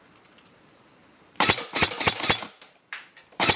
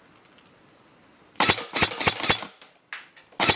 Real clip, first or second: second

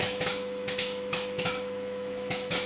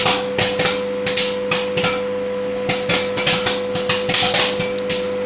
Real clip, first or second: second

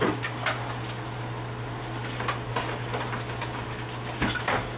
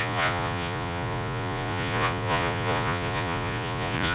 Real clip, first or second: first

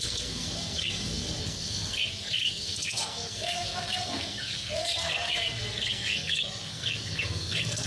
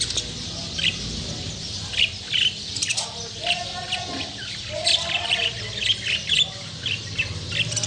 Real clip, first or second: second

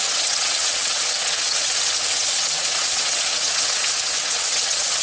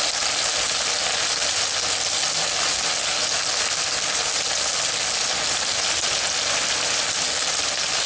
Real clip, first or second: second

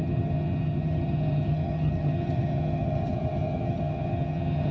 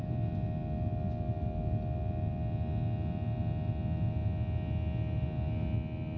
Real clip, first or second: second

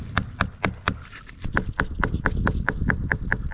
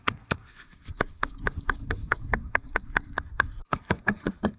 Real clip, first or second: first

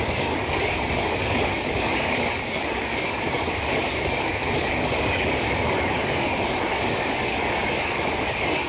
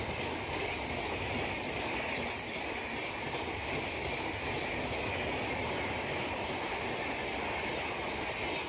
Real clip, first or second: second